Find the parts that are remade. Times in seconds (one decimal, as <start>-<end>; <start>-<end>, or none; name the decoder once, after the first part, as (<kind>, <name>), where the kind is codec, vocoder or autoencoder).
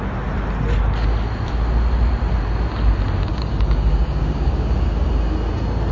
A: 3.3-5.1 (codec, DAC)